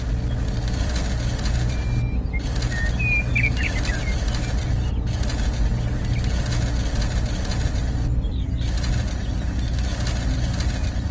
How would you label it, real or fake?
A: real